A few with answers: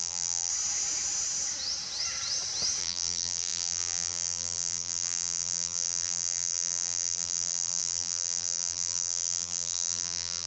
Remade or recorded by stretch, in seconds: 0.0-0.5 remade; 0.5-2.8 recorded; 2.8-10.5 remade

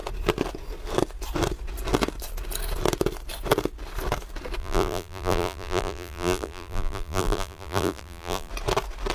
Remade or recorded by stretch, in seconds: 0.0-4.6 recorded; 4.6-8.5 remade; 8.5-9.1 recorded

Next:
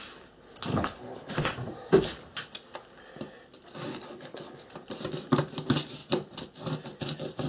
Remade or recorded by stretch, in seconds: 0.0-0.7 recorded; 0.7-1.3 remade; 1.3-3.9 recorded; 3.9-4.7 remade; 4.7-7.5 recorded

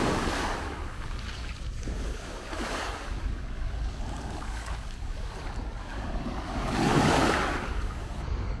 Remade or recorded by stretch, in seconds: 0.0-8.6 remade

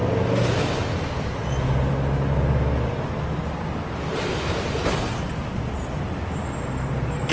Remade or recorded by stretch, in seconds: 0.0-7.3 recorded

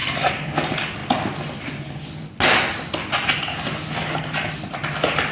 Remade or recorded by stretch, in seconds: 0.0-5.3 recorded

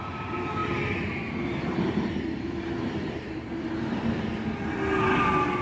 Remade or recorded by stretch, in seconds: 0.0-5.6 recorded